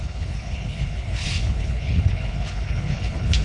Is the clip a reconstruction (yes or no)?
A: yes